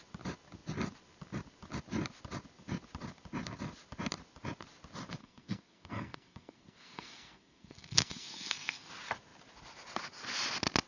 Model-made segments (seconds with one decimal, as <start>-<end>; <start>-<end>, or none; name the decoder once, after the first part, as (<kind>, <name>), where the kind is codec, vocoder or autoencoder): 5.2-8.9 (codec, SNAC)